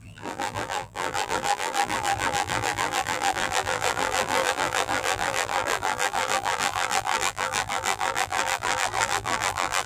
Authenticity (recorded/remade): remade